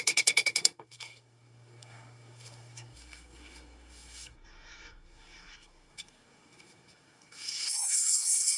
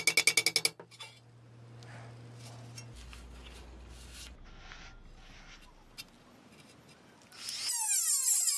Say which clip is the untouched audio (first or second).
second